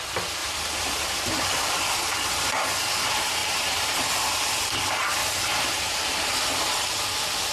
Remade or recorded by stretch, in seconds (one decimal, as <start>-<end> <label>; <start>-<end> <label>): 0.0-0.4 recorded; 0.4-1.7 remade; 1.7-3.4 recorded; 3.4-4.5 remade; 4.5-5.2 recorded; 5.2-6.3 remade; 6.3-7.5 recorded